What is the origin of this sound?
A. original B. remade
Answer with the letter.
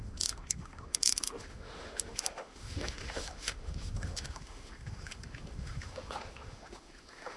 B